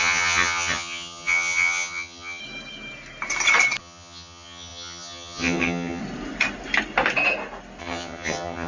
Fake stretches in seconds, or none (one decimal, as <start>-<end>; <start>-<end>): 0.0-2.4; 3.8-6.0; 7.8-8.7